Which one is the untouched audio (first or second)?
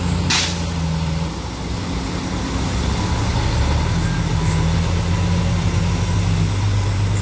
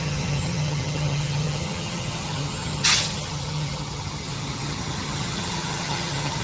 first